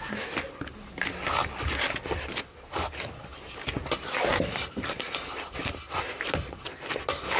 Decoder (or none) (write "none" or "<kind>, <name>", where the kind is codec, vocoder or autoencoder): none